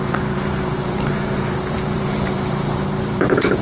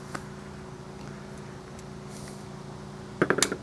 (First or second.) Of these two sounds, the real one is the second